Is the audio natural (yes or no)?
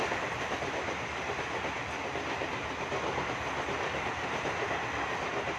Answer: yes